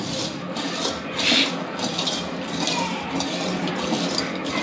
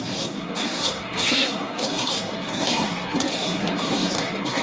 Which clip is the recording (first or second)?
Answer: first